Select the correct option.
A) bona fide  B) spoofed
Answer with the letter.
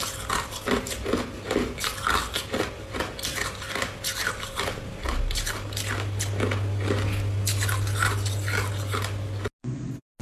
A